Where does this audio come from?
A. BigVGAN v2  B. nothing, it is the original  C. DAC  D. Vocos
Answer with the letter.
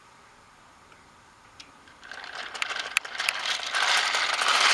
A